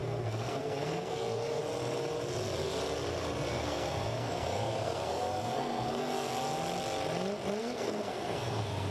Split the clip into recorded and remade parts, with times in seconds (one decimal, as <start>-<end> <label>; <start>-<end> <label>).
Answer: 0.0-1.6 remade; 1.6-3.5 recorded; 3.5-6.3 remade; 6.3-7.6 recorded; 7.6-8.9 remade

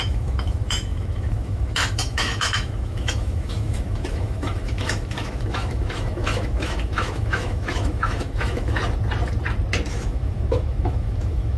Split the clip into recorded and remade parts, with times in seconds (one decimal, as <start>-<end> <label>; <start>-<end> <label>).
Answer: 0.0-8.8 remade; 8.8-9.9 recorded; 9.9-11.6 remade

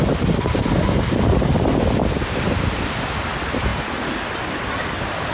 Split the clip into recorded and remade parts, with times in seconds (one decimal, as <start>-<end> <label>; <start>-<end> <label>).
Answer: 0.0-5.3 recorded

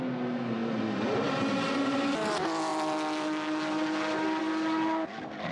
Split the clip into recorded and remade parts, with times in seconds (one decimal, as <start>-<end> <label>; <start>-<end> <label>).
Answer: 0.0-5.5 recorded